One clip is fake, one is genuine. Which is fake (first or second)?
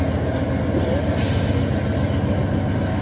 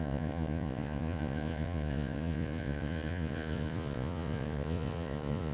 second